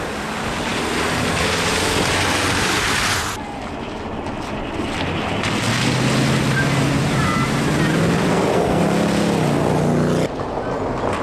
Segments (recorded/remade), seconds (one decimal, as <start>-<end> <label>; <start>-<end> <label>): 0.0-8.3 recorded; 8.3-8.8 remade; 8.8-11.2 recorded